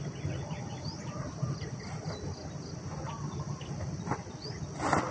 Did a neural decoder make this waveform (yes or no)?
no